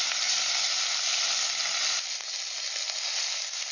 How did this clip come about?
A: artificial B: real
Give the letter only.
B